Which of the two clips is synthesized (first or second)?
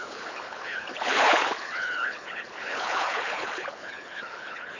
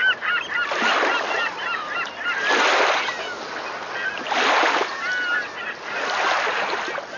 first